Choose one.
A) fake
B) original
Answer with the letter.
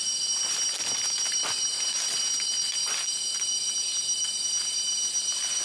B